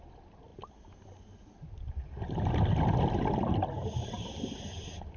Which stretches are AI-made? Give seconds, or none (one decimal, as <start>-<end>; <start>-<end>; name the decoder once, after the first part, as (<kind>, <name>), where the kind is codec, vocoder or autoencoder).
none